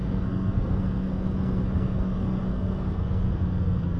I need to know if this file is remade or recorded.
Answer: remade